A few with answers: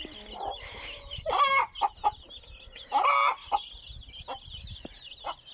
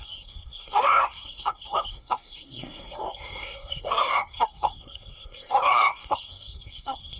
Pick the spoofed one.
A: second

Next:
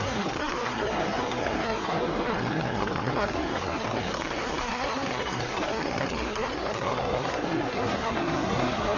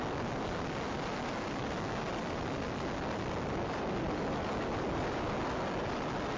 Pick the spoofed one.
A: first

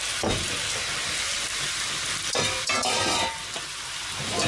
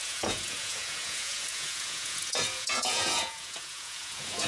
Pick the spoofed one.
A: second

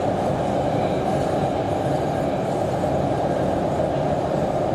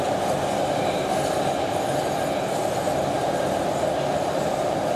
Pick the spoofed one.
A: first